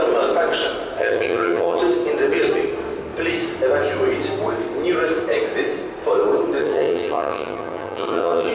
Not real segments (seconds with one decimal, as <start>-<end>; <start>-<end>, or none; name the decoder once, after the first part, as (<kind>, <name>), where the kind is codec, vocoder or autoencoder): 1.0-1.8 (vocoder, HiFi-GAN); 6.6-8.5